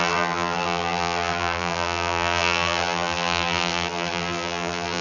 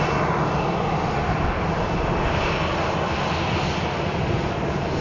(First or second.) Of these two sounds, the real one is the second